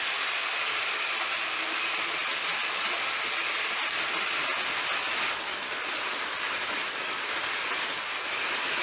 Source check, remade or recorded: recorded